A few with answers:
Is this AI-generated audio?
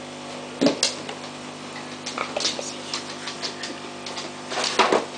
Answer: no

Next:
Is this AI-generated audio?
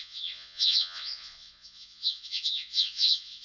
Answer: yes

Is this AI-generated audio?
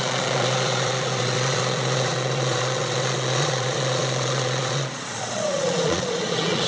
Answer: yes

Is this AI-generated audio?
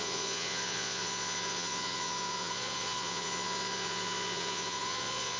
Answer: yes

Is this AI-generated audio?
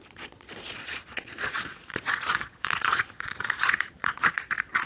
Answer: yes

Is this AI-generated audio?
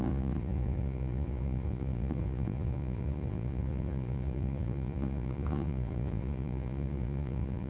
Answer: yes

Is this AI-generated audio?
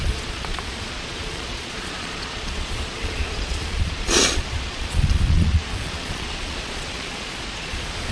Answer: yes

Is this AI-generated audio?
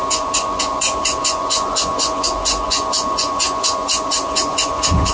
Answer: yes